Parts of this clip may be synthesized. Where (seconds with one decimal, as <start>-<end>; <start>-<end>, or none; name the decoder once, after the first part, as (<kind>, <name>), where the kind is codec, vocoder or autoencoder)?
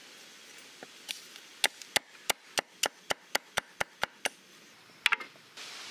none